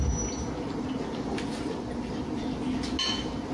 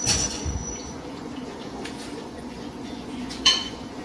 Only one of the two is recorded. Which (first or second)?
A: first